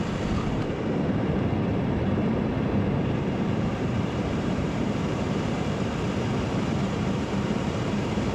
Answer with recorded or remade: remade